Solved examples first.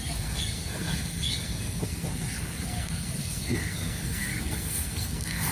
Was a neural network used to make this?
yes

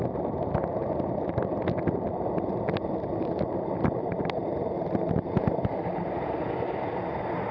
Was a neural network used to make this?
no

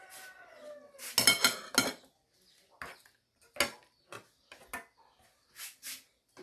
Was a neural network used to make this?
no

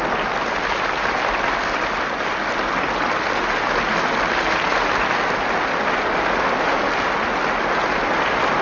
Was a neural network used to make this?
no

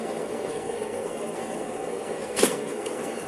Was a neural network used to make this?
yes